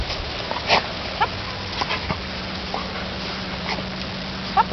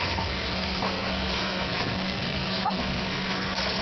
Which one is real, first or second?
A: first